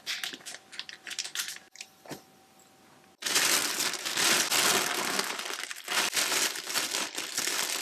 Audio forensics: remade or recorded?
recorded